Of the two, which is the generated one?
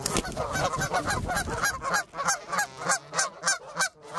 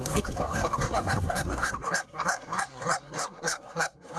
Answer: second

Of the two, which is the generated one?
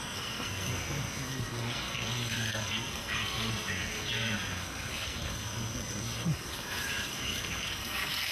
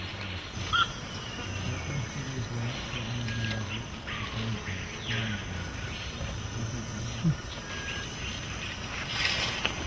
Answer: first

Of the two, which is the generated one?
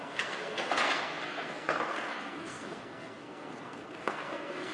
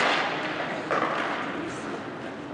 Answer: first